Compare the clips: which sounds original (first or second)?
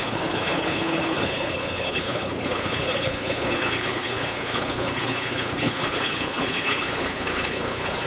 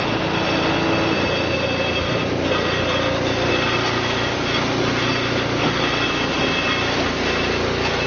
second